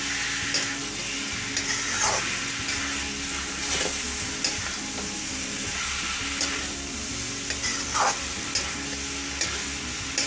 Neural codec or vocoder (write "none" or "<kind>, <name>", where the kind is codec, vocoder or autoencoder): none